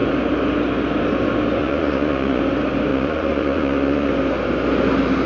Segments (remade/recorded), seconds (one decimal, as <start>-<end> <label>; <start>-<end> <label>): 0.0-1.6 recorded; 1.6-2.4 remade; 2.4-2.9 recorded; 2.9-4.1 remade; 4.1-5.3 recorded